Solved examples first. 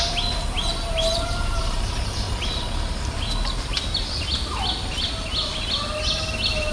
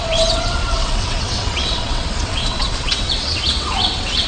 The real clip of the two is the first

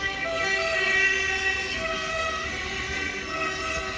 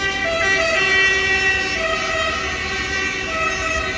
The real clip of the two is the second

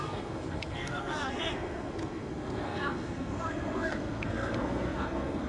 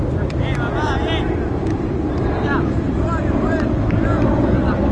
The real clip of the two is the second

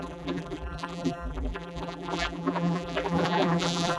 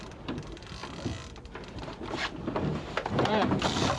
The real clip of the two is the second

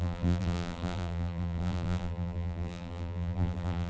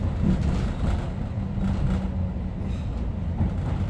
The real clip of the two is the second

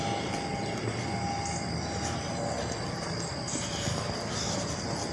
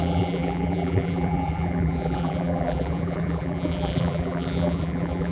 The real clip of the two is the first